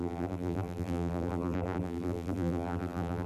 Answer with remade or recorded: remade